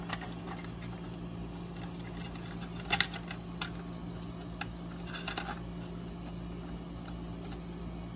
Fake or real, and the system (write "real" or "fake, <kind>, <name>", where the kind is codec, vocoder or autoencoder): real